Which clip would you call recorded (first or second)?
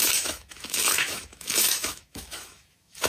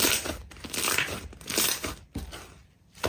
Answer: second